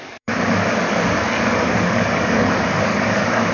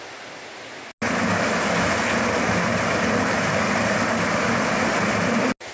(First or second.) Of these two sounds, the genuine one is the second